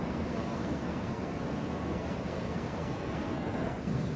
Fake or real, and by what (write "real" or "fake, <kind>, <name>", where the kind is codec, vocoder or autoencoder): fake, codec, SNAC